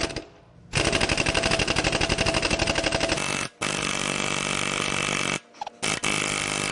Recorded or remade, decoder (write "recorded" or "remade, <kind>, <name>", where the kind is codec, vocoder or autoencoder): recorded